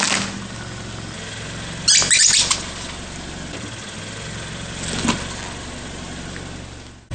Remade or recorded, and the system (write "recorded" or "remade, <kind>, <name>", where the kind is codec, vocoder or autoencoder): recorded